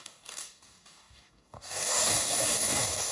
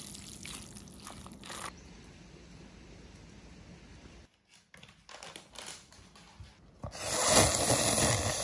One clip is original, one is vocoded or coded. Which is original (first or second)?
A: second